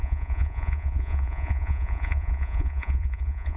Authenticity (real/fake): fake